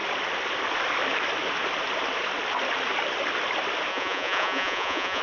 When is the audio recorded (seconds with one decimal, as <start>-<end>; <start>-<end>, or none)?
0.0-3.9